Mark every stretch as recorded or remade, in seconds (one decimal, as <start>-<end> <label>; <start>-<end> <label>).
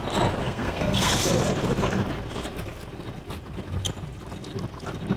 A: 0.0-0.4 recorded; 0.4-1.1 remade; 1.1-5.2 recorded